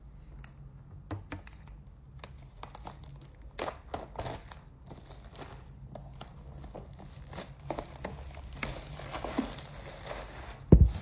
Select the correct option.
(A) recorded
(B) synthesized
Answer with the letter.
A